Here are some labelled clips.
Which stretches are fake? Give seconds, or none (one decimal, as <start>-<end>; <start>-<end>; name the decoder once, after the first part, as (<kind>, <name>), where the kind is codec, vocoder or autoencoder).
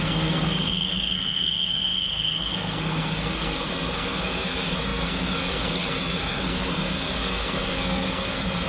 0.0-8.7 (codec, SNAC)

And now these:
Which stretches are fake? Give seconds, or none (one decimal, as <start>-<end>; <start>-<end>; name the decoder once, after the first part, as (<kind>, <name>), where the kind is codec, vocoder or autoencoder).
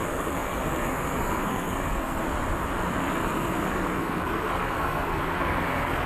0.0-2.2 (codec, SNAC); 2.9-6.1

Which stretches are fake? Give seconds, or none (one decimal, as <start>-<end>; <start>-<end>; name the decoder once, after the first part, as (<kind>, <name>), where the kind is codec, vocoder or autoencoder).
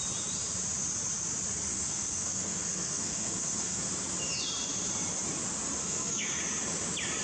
1.7-3.9 (codec, SNAC); 5.8-6.4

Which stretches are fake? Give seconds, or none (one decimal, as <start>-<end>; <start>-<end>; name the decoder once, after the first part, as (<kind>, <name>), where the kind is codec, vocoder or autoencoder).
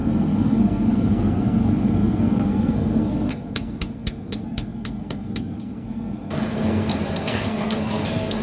0.0-8.4 (codec, SNAC)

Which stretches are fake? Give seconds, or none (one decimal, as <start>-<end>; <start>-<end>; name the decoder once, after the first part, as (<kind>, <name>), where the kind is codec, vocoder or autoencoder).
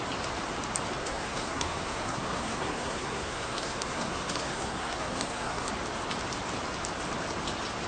1.0-5.7 (codec, SNAC)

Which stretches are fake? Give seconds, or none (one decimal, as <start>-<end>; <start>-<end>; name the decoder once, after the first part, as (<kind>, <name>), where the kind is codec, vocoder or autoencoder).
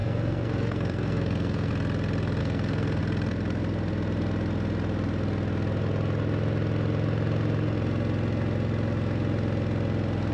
0.0-1.7 (codec, SNAC); 2.4-3.0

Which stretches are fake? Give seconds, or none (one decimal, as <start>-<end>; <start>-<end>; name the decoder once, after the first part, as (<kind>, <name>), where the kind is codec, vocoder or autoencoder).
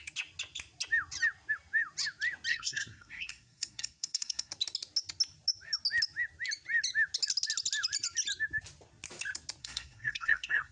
2.5-4.5 (codec, SNAC); 9.6-10.7